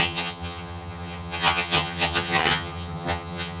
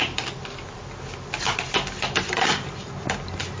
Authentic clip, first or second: second